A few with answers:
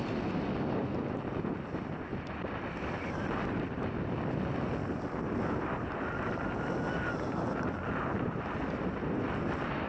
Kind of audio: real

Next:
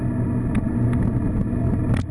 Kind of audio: real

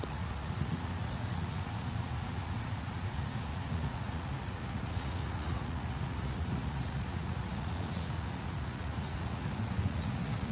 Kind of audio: fake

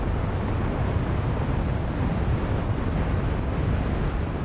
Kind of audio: real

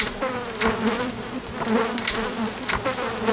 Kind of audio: real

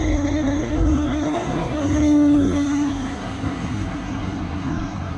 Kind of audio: fake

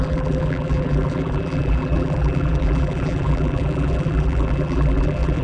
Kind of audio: fake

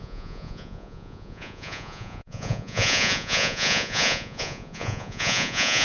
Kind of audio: fake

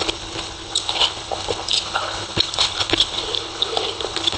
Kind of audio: fake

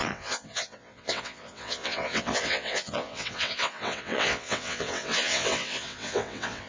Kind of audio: fake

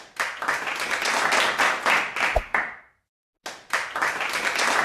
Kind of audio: real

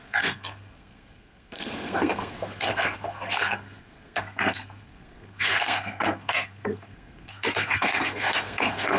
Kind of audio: fake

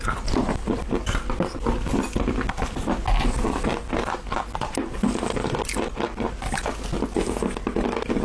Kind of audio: real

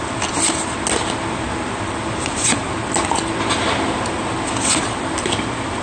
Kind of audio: real